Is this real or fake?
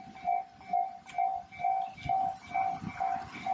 real